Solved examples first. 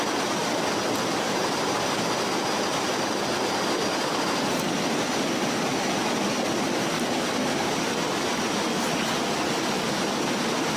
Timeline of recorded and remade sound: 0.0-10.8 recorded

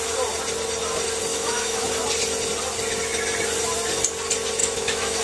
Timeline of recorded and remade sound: 0.0-1.3 recorded; 1.3-1.9 remade; 1.9-4.6 recorded; 4.6-5.2 remade

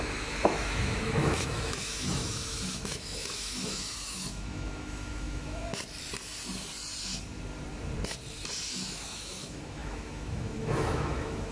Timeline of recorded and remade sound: 0.0-5.7 remade; 5.7-8.7 recorded; 8.7-11.5 remade

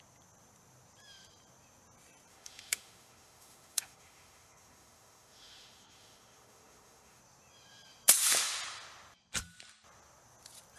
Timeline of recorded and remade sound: 0.0-2.3 recorded; 2.3-7.2 remade; 7.2-10.8 recorded

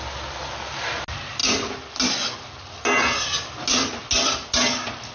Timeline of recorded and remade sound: 0.0-5.1 recorded